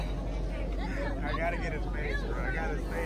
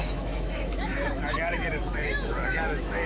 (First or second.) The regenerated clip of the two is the second